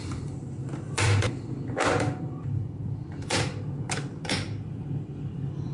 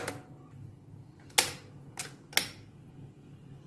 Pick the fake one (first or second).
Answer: first